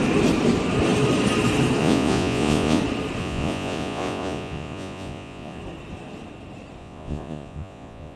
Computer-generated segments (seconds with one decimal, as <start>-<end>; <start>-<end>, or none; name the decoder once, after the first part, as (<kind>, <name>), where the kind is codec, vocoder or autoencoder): 1.8-2.8 (vocoder, Vocos); 3.2-5.6; 6.8-8.2